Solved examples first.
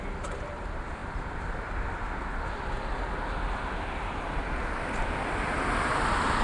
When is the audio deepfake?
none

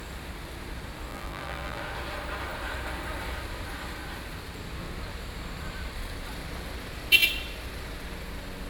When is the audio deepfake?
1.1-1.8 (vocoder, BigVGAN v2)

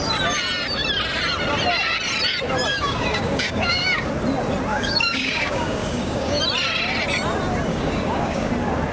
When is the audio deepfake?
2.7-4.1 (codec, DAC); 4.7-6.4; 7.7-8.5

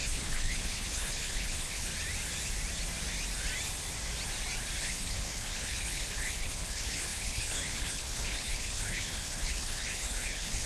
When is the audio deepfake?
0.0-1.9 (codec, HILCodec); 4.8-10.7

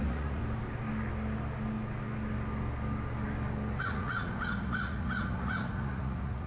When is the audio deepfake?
0.0-0.4 (vocoder, Vocos); 3.8-6.5

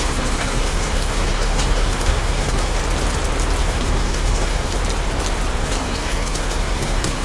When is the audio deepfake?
0.0-2.8 (codec, SNAC); 3.6-4.8; 5.6-7.2